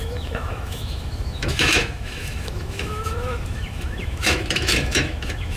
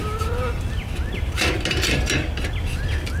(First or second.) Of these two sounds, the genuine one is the second